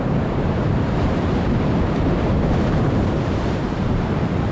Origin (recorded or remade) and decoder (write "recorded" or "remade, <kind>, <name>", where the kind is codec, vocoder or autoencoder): remade, vocoder, BigVGAN v2